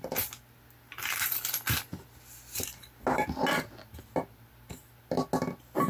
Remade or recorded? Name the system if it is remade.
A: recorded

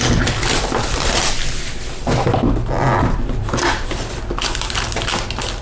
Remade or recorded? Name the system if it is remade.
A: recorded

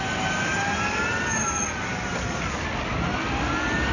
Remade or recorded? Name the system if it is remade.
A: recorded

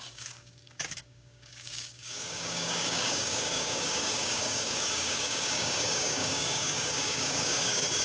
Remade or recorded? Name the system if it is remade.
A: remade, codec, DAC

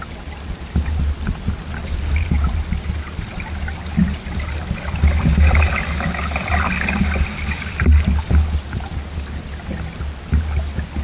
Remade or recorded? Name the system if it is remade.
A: recorded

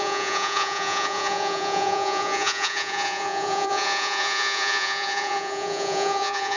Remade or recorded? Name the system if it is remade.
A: remade, vocoder, Vocos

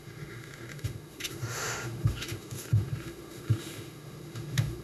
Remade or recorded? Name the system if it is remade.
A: remade, autoencoder, DAC-VAE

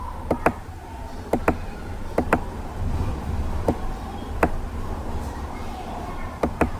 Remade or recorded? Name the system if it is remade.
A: remade, vocoder, BigVGAN v2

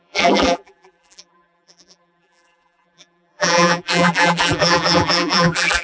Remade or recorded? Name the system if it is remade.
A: remade, vocoder, BigVGAN v2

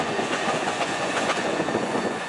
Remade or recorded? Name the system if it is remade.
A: remade, vocoder, Vocos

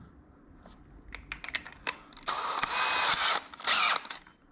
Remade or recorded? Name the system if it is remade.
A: recorded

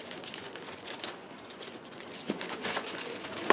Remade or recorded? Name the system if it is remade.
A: remade, vocoder, Vocos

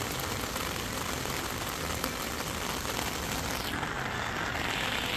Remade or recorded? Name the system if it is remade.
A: recorded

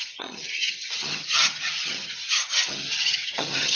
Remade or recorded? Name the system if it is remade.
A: remade, vocoder, HiFi-GAN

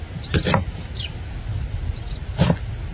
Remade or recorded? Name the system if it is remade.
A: recorded